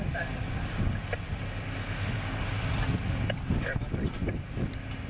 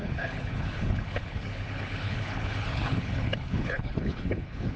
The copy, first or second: second